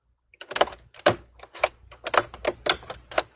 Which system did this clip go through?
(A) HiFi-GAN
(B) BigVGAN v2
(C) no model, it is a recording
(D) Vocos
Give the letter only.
C